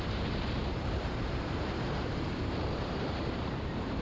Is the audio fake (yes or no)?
yes